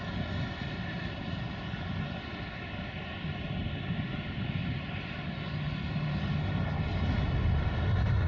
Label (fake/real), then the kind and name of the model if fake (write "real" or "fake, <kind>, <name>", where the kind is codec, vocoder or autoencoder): real